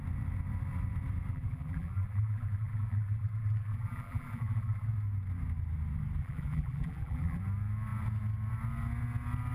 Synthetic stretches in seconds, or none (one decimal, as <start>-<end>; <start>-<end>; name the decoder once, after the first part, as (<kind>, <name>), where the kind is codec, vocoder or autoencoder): 1.3-4.9 (vocoder, BigVGAN v2); 6.2-7.4